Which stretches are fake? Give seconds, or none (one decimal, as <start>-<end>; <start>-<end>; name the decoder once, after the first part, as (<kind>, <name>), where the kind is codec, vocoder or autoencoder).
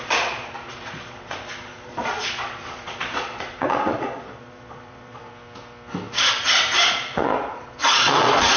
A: 0.0-5.2 (vocoder, Vocos); 6.9-8.6